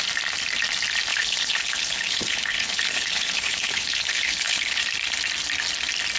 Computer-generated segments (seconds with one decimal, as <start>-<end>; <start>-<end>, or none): 1.1-4.8